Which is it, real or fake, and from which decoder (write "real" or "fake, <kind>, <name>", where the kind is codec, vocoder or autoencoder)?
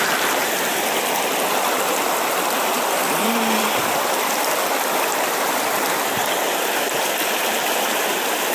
fake, vocoder, BigVGAN v2